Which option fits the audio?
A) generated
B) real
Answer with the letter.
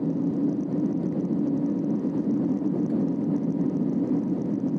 B